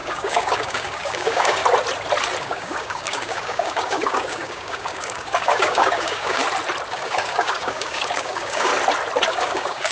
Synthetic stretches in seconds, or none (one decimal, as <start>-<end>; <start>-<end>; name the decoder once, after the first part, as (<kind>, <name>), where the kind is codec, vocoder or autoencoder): 0.0-1.6 (codec, DAC); 2.4-6.4; 6.9-8.7; 9.3-9.9